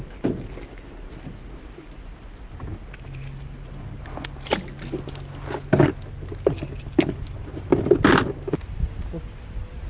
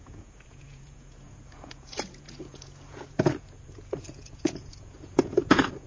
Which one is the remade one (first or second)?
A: second